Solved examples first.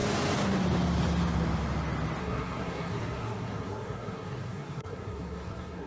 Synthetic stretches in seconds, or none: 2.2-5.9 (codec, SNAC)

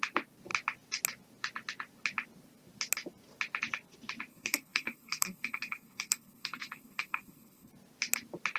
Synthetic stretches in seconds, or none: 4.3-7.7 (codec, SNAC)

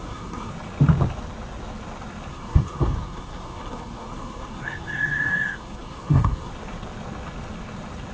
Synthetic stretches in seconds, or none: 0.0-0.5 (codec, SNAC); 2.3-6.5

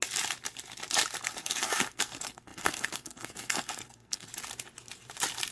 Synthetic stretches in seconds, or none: 1.2-4.3 (codec, SNAC)

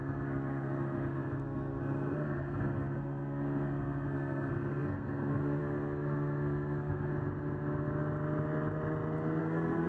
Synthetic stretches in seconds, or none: 0.0-7.1 (codec, SNAC); 9.4-9.9